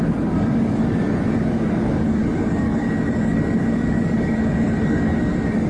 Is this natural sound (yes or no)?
no